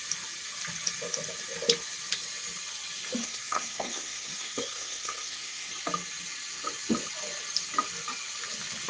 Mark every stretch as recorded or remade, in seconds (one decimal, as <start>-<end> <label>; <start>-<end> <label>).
0.0-3.2 recorded; 3.2-5.7 remade; 5.7-8.9 recorded